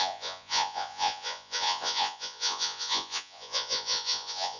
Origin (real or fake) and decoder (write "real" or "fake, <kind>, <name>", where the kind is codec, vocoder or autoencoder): fake, vocoder, Vocos